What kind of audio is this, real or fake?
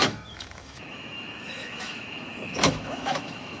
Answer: fake